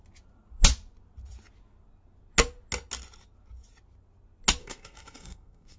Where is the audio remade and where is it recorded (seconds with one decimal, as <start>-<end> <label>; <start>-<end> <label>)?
0.0-4.6 recorded; 4.6-5.8 remade